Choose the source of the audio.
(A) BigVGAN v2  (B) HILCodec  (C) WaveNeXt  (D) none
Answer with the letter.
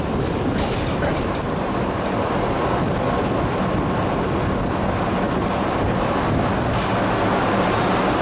D